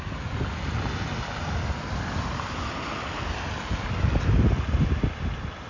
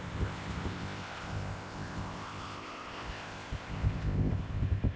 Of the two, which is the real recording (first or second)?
first